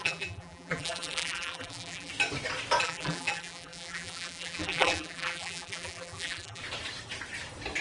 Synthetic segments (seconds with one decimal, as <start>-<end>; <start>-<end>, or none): 0.0-2.1; 2.8-6.6